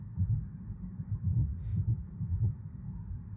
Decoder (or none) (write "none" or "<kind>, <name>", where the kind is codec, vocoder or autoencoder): autoencoder, DAC-VAE